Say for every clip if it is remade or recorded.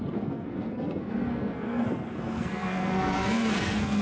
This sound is remade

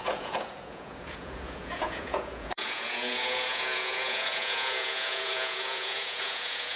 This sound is remade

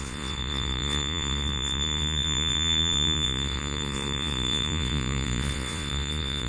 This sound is remade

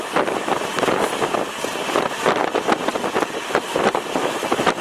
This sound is recorded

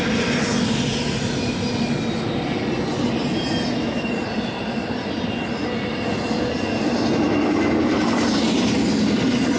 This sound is recorded